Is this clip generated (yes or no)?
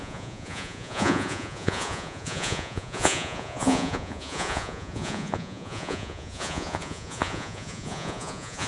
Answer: yes